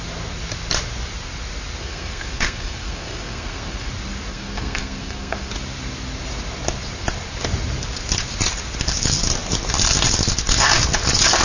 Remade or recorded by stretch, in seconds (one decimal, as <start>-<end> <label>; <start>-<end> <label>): 0.0-1.8 recorded; 1.8-3.9 remade; 3.9-4.3 recorded; 4.3-5.5 remade; 5.5-11.4 recorded